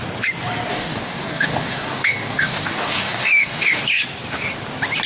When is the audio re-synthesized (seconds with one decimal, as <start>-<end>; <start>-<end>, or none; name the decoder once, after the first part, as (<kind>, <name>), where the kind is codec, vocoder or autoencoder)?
0.7-3.8 (codec, DAC)